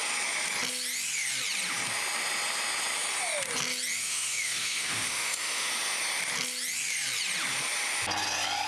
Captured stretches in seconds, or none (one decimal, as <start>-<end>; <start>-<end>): 0.0-4.0; 5.7-8.7